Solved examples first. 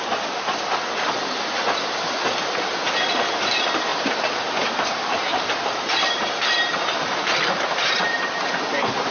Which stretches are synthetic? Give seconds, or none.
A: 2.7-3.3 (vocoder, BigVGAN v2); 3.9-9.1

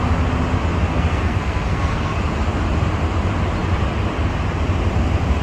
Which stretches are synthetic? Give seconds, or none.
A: 0.9-2.1 (codec, SNAC)

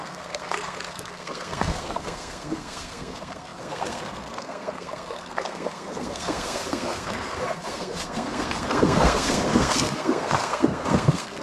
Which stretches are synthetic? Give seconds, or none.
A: 0.0-11.4 (codec, SNAC)

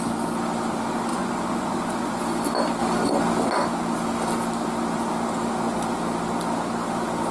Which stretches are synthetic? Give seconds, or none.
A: 1.1-2.2 (vocoder, Vocos)

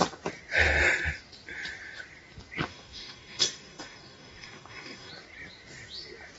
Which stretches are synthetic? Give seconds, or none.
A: 2.7-5.1 (codec, DAC)

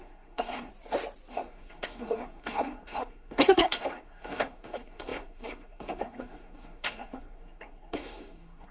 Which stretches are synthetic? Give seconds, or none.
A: 0.0-0.7 (codec, SNAC); 1.3-8.7

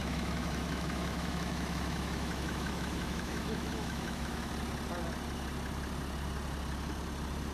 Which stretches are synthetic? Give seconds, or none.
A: 0.0-4.5 (autoencoder, DAC-VAE)